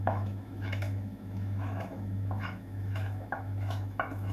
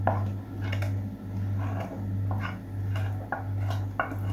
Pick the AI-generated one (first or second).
first